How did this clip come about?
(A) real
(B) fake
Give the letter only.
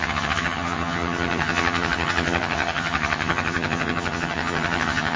B